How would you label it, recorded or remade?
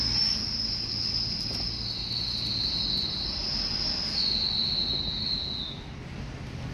recorded